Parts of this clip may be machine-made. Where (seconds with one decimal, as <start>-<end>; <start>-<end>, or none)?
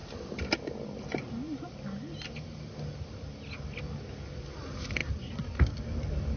none